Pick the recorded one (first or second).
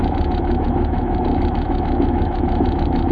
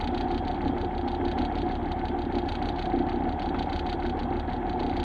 second